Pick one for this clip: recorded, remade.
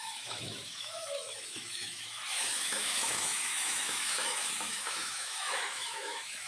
remade